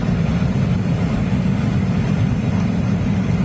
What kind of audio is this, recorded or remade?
recorded